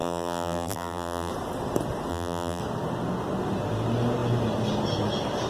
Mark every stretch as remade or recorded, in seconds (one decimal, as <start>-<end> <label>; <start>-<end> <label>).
0.0-1.3 remade; 1.3-2.1 recorded; 2.1-2.6 remade; 2.6-5.5 recorded